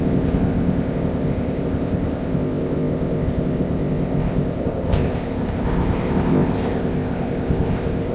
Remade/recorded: remade